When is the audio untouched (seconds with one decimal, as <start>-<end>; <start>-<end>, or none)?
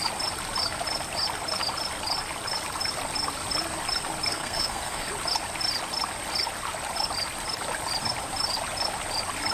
0.0-4.3; 5.1-9.5